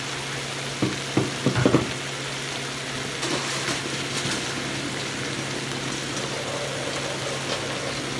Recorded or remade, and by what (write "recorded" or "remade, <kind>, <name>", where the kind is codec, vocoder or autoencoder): recorded